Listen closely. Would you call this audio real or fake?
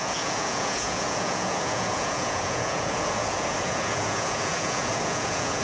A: fake